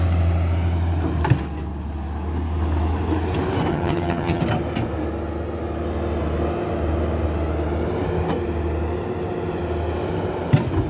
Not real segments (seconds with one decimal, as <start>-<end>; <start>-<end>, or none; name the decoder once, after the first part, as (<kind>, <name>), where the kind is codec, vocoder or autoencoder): 3.7-4.4 (vocoder, HiFi-GAN)